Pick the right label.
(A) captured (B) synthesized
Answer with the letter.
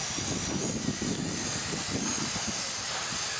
A